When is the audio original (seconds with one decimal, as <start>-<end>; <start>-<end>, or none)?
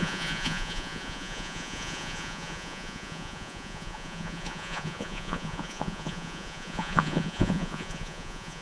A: none